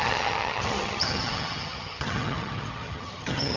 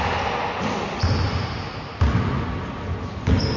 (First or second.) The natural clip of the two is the second